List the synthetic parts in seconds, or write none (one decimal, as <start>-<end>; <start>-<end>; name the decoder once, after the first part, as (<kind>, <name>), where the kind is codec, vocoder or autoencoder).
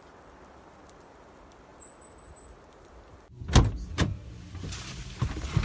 none